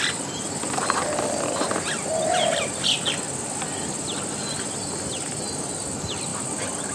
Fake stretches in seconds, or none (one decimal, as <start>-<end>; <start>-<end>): none